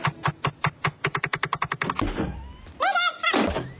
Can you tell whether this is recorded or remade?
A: recorded